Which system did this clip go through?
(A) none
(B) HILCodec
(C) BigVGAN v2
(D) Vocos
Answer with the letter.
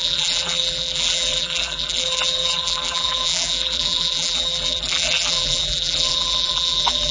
C